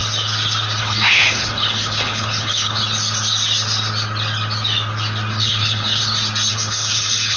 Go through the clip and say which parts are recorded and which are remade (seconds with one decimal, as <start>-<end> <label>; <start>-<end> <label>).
0.0-0.8 recorded; 0.8-2.8 remade; 2.8-5.3 recorded; 5.3-6.0 remade; 6.0-6.5 recorded; 6.5-7.4 remade